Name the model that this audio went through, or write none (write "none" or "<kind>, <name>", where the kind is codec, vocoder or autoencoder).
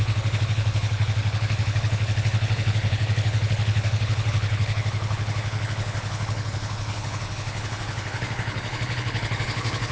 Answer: codec, HILCodec